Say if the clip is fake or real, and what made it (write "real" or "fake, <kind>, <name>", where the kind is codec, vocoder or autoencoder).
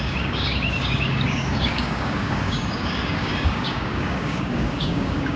fake, codec, DAC